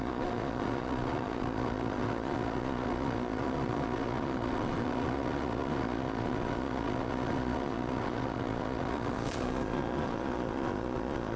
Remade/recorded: remade